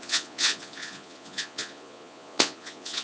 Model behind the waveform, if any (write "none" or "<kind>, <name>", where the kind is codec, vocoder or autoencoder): vocoder, Vocos